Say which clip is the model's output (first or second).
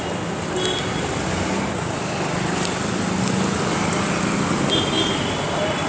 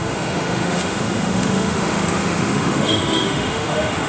second